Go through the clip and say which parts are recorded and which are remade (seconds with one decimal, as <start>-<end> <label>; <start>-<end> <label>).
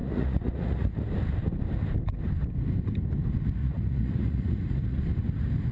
0.0-1.0 remade; 1.0-3.6 recorded; 3.6-5.0 remade; 5.0-5.7 recorded